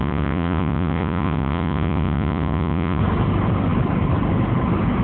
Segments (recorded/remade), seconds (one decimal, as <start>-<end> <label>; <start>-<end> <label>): 0.0-3.0 remade; 3.0-5.0 recorded